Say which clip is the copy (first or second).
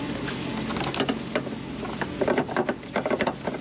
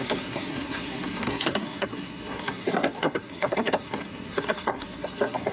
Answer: second